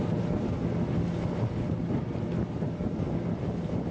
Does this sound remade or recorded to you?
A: recorded